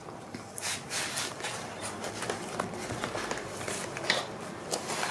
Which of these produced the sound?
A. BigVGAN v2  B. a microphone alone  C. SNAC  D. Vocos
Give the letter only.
B